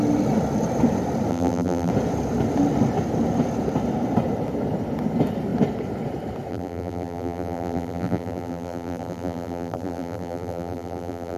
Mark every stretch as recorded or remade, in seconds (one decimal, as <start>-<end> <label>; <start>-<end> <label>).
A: 0.0-1.3 recorded; 1.3-1.9 remade; 1.9-6.5 recorded; 6.5-11.4 remade